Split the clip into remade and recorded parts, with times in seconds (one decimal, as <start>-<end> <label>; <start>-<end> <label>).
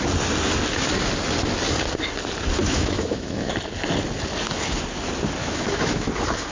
0.0-2.6 recorded; 2.6-3.5 remade; 3.5-5.4 recorded; 5.4-6.1 remade; 6.1-6.5 recorded